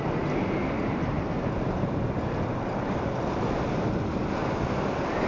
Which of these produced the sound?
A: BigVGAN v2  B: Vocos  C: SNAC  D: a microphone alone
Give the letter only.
D